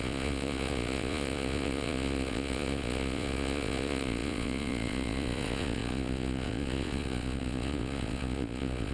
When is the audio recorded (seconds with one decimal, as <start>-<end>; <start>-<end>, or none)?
none